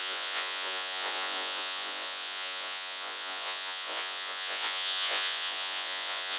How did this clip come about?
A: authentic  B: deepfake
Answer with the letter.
B